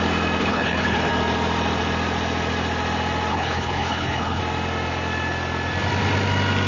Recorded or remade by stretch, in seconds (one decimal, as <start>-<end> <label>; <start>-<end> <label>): 0.0-0.4 recorded; 0.4-1.1 remade; 1.1-3.3 recorded; 3.3-4.4 remade; 4.4-6.7 recorded